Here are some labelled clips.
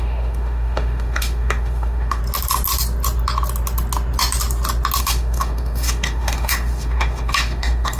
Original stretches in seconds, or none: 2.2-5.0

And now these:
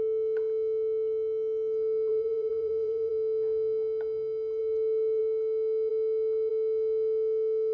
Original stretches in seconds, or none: 0.0-2.1; 3.1-7.7